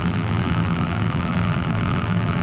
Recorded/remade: remade